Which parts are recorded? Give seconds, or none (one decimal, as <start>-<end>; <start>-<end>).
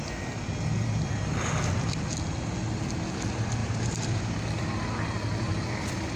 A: 0.0-3.6; 4.2-6.2